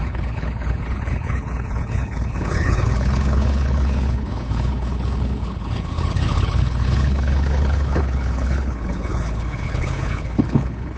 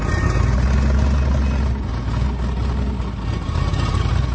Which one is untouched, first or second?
second